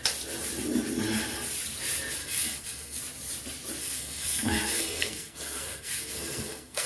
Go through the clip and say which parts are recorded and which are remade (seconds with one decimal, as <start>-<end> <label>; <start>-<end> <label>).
0.0-2.2 recorded; 2.2-3.0 remade; 3.0-3.8 recorded; 3.8-6.9 remade